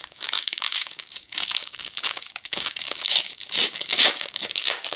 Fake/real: fake